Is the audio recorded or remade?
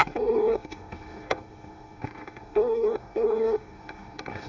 remade